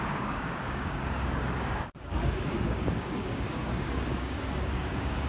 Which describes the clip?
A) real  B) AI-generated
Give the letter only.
B